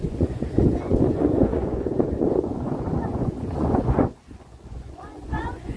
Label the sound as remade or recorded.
remade